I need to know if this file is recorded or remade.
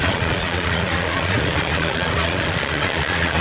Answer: remade